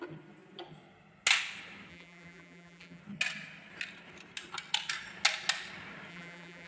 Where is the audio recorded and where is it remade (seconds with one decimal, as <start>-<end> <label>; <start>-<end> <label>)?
0.0-1.9 recorded; 1.9-3.0 remade; 3.0-6.1 recorded; 6.1-6.7 remade